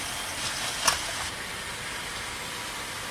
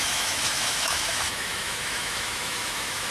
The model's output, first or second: second